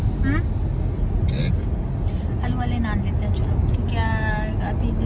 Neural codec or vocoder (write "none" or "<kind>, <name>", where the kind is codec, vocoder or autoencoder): none